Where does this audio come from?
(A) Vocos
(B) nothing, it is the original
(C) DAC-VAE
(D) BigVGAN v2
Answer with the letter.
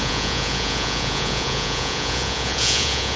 A